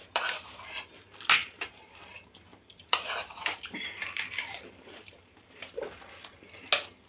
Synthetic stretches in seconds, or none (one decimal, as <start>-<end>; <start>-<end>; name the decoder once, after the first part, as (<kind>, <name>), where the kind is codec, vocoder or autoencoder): 0.0-0.9 (vocoder, BigVGAN v2); 1.4-2.0; 2.5-5.8